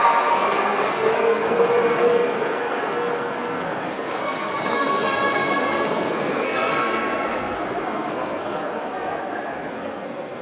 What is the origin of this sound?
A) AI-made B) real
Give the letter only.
A